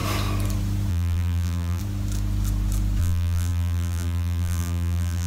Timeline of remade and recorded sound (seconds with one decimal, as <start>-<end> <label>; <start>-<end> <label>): 0.0-0.9 recorded; 0.9-1.8 remade; 1.8-3.0 recorded; 3.0-5.3 remade